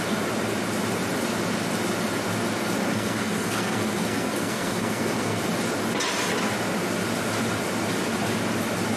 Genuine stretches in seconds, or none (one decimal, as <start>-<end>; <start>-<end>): 0.0-2.8; 5.4-9.0